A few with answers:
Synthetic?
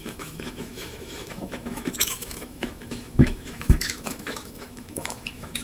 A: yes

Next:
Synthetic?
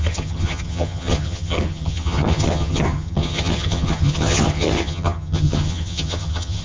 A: yes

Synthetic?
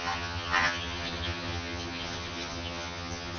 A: yes